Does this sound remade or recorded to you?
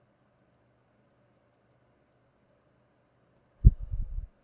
recorded